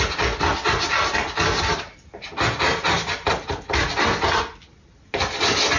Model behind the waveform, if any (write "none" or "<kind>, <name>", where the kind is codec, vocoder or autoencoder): none